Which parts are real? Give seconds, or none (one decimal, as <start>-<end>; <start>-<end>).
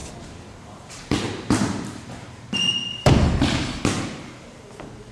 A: 3.1-5.1